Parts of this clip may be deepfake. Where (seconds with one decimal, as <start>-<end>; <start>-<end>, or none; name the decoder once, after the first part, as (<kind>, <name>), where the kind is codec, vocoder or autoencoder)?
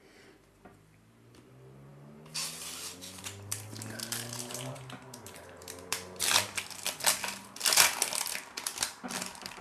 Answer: 0.0-9.6 (vocoder, BigVGAN v2)